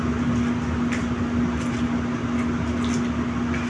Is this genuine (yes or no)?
yes